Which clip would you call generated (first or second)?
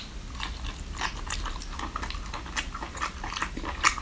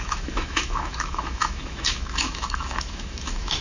second